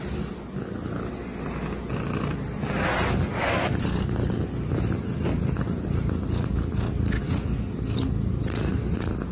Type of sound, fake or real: real